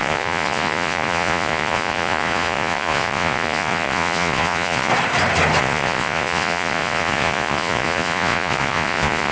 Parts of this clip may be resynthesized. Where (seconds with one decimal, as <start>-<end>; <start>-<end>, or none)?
0.0-4.9; 5.6-9.3